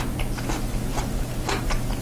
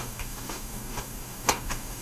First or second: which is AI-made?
second